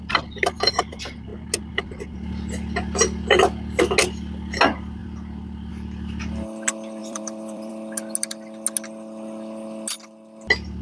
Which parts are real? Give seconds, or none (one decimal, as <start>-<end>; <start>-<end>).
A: 0.0-5.0; 5.7-7.0; 7.7-10.8

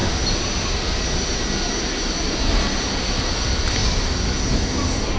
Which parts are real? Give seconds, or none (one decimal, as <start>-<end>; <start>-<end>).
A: 0.0-5.2